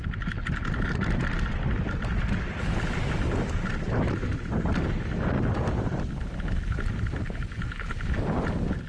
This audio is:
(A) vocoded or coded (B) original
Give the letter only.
B